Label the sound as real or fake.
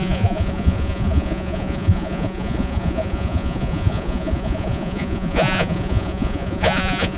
fake